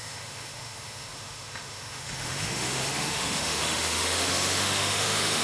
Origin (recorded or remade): remade